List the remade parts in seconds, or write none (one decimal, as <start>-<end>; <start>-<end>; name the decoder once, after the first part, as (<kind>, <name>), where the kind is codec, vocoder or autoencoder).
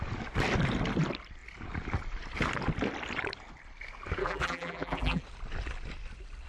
4.2-5.2 (vocoder, BigVGAN v2)